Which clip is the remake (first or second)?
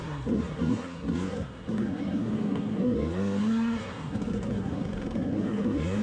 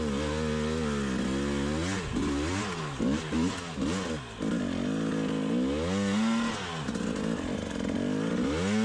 first